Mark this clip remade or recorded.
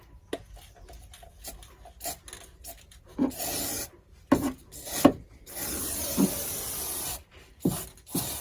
recorded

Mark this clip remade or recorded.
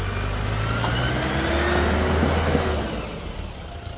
recorded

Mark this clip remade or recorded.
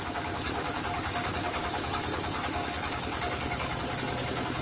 remade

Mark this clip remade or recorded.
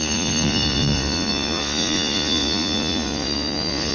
remade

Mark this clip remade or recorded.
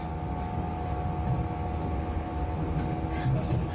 recorded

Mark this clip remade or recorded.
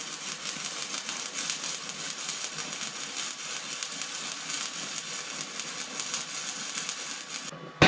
recorded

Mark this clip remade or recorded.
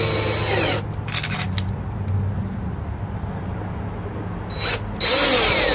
recorded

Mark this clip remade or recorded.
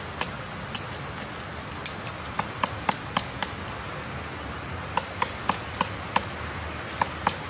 recorded